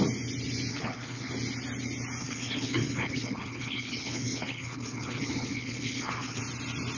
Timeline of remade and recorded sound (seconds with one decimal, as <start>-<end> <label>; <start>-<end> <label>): 0.0-0.7 recorded; 0.7-1.3 remade; 1.3-2.2 recorded; 2.2-6.4 remade; 6.4-7.0 recorded